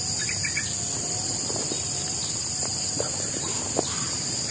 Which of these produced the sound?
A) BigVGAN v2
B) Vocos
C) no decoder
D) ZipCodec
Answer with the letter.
C